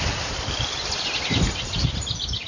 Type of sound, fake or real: real